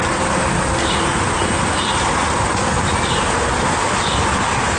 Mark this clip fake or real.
real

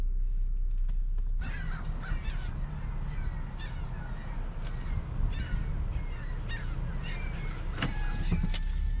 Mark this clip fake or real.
real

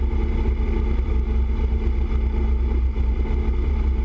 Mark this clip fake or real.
real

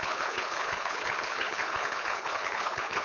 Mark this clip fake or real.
fake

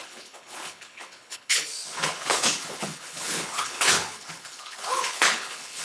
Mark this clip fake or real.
fake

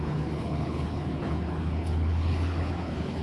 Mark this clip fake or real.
fake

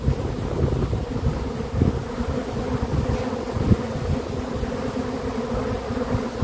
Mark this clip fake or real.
real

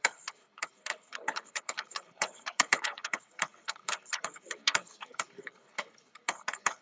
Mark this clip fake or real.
fake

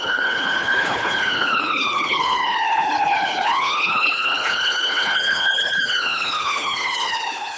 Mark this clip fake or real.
fake